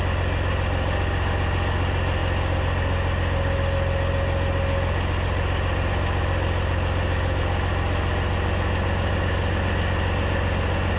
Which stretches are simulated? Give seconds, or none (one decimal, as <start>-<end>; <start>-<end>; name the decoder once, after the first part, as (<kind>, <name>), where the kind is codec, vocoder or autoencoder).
none